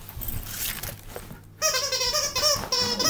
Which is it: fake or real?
real